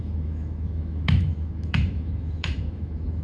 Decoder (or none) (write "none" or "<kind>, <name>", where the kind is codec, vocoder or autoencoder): autoencoder, DAC-VAE